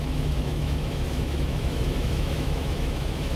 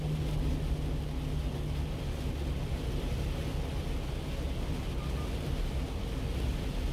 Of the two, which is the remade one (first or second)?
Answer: first